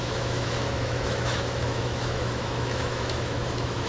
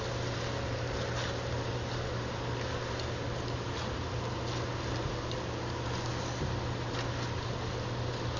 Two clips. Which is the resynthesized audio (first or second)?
first